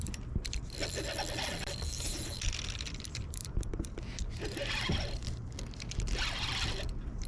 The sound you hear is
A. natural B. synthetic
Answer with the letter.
B